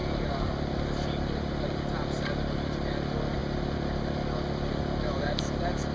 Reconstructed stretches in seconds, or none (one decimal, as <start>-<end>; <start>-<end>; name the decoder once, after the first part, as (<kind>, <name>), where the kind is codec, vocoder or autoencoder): none